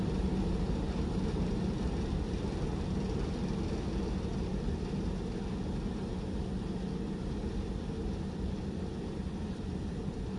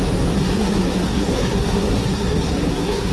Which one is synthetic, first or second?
second